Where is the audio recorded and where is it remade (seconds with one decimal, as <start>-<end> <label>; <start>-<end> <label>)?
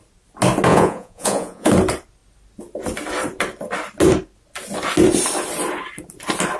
0.0-0.7 recorded; 0.7-1.7 remade; 1.7-6.6 recorded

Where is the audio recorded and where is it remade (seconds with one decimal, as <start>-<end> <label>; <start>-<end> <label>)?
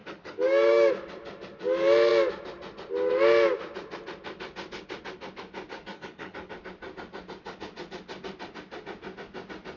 0.0-0.9 remade; 0.9-5.7 recorded; 5.7-6.5 remade; 6.5-9.8 recorded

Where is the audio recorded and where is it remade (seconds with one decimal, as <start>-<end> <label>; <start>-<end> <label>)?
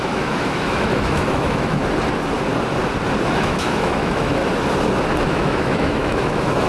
0.0-1.8 remade; 1.8-3.2 recorded; 3.2-4.4 remade; 4.4-5.3 recorded; 5.3-6.7 remade